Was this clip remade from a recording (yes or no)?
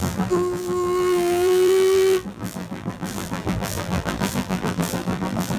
yes